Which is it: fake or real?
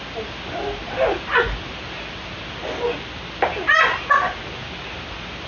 real